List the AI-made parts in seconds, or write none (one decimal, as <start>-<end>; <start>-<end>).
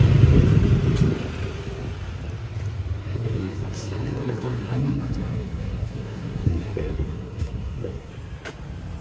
3.0-8.1